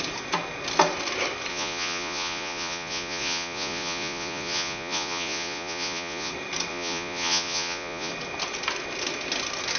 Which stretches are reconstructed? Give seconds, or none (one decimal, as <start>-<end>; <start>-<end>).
1.5-6.3; 6.7-8.1